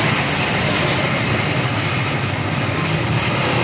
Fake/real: fake